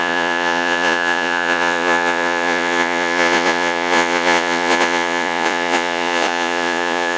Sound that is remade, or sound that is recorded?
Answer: remade